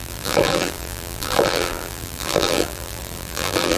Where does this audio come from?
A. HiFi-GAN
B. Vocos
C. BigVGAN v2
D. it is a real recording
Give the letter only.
C